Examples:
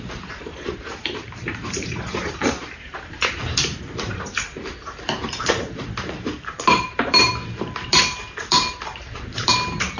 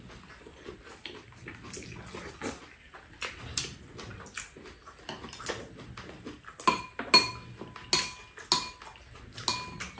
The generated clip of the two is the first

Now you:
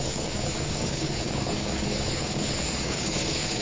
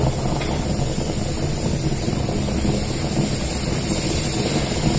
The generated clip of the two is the first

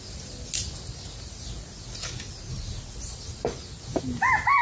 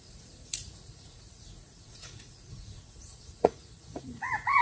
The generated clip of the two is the second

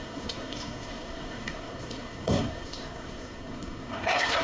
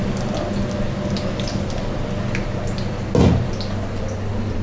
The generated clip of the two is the first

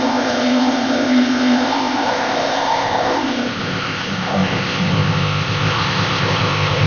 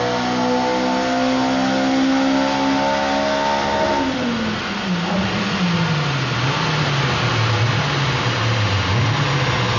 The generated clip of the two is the first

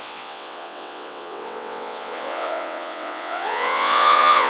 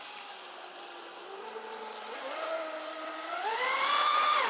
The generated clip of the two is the first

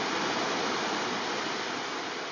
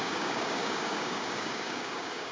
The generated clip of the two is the second